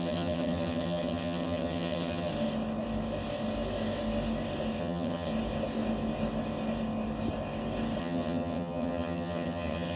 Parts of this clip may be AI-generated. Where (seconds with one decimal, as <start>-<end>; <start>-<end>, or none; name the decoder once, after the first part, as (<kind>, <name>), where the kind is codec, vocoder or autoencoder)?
0.0-2.3 (vocoder, HiFi-GAN); 4.8-5.3; 8.0-10.0